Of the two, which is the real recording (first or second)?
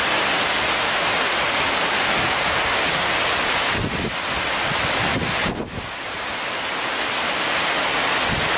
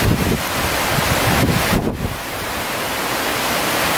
first